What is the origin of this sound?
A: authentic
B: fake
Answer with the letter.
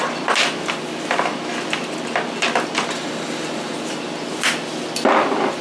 A